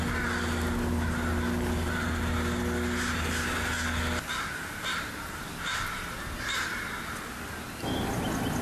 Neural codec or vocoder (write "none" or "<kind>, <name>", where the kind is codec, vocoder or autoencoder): none